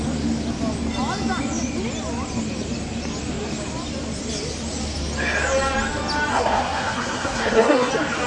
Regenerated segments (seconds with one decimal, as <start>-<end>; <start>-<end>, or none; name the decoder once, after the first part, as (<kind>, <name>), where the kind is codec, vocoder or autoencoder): 6.3-7.9 (codec, SNAC)

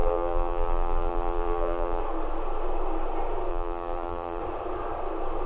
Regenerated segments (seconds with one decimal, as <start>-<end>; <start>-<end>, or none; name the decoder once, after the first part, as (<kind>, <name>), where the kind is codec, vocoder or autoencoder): 0.0-2.0 (vocoder, BigVGAN v2); 3.5-4.4

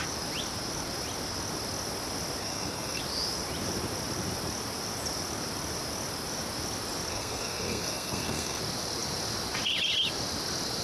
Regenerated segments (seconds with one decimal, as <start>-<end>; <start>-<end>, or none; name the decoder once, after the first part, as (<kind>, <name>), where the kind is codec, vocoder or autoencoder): 2.4-3.0 (codec, SNAC); 7.1-8.6

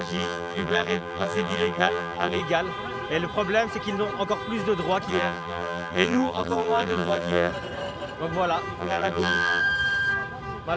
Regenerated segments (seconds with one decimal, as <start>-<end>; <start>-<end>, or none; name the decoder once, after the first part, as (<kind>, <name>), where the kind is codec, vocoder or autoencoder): 0.0-2.4 (vocoder, BigVGAN v2); 5.1-7.5; 8.8-9.6